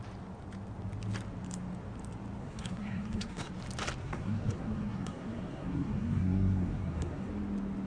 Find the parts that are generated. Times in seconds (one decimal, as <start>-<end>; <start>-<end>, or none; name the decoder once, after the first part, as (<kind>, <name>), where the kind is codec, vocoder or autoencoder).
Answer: 2.4-3.5 (codec, SNAC); 4.0-7.3